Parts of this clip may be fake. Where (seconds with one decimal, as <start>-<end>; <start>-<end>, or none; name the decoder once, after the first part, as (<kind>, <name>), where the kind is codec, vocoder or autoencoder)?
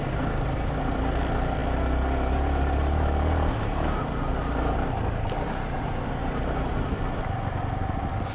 none